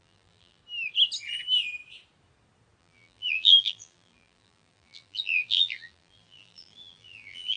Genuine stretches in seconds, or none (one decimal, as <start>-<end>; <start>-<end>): 0.6-2.8